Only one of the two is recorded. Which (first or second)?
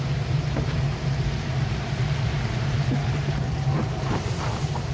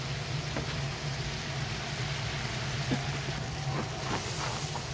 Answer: second